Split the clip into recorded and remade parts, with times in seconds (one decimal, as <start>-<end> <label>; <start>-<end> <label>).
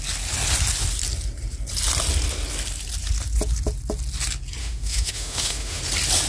0.0-4.6 recorded; 4.6-5.8 remade; 5.8-6.3 recorded